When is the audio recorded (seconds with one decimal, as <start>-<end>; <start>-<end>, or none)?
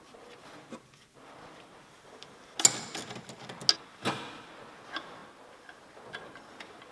0.0-6.9